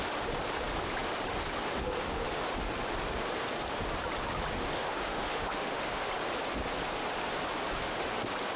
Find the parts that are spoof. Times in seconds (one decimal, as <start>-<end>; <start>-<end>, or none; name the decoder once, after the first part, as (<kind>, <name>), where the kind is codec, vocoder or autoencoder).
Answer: 4.8-6.1 (autoencoder, DAC-VAE)